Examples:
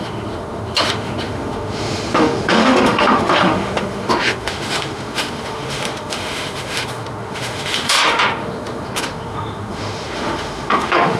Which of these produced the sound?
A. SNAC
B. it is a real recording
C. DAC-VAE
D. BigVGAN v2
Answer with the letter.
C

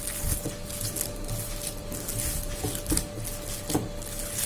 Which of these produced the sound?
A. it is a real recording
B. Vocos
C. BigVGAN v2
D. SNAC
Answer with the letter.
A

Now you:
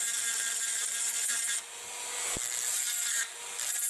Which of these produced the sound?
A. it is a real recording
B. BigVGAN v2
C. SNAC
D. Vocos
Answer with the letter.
A